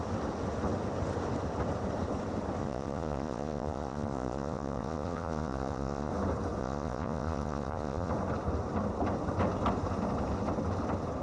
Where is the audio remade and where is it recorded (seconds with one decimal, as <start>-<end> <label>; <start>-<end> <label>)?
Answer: 0.0-2.6 recorded; 2.6-6.1 remade; 6.1-6.6 recorded; 6.6-8.1 remade; 8.1-11.2 recorded